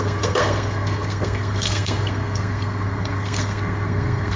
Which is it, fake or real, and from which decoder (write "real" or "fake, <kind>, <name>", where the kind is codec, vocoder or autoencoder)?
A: fake, codec, SNAC